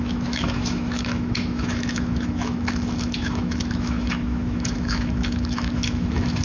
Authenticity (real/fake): fake